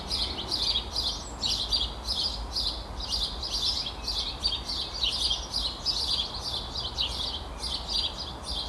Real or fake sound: real